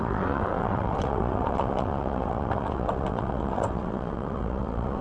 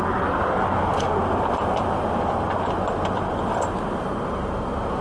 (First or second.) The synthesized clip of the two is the first